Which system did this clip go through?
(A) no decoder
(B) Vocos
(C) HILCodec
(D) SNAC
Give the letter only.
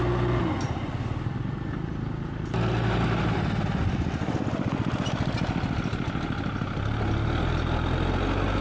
A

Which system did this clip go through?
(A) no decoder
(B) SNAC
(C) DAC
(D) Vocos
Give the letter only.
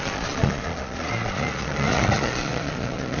D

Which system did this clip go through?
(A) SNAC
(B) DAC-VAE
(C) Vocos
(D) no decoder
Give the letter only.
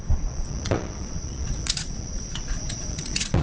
C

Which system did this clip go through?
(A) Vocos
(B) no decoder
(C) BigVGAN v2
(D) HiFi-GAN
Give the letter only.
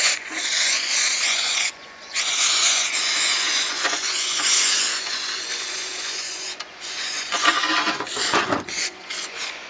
A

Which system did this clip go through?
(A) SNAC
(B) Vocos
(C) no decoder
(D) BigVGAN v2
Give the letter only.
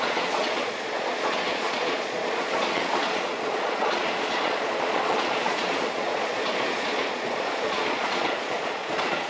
B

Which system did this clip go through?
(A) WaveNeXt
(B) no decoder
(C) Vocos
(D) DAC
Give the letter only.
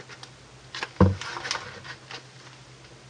B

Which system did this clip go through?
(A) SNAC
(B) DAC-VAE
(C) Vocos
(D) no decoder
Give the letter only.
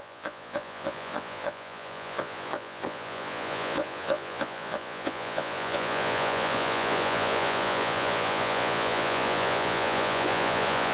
C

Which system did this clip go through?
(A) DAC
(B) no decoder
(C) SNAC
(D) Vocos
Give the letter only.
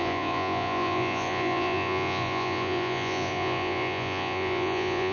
D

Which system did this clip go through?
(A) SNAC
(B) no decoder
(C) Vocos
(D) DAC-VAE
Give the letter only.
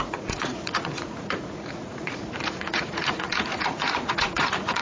C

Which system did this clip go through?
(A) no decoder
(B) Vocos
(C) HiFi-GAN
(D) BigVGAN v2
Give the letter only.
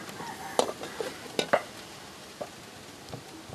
A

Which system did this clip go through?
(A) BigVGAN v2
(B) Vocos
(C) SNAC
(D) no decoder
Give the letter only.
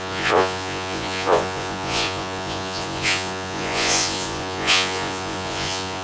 B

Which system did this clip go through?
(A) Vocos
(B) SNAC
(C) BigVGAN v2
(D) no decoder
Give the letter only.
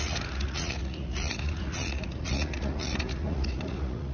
A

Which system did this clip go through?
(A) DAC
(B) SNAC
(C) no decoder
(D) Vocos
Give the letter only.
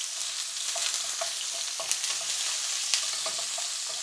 C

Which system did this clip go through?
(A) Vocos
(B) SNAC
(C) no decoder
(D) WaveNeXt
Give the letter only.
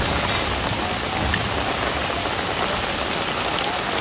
C